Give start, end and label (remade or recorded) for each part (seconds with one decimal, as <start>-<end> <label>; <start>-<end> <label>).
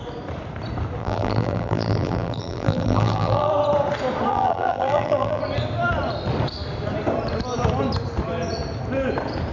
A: 0.0-1.0 recorded; 1.0-3.5 remade; 3.5-4.3 recorded; 4.3-5.4 remade; 5.4-9.5 recorded